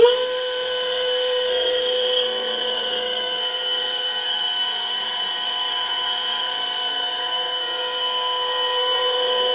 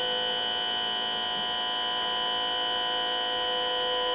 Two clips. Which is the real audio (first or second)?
second